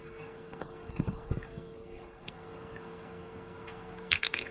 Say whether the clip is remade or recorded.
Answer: remade